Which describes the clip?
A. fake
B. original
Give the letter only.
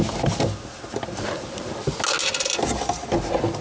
B